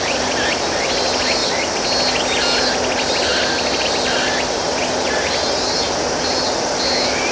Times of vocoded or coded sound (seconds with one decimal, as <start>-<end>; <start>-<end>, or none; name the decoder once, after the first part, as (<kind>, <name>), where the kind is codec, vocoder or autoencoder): none